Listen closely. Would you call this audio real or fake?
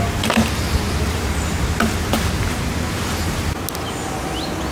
real